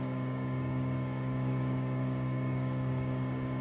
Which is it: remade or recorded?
remade